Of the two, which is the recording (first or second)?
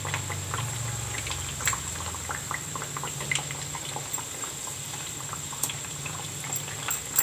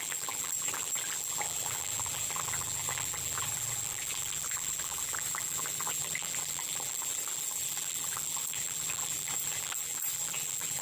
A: first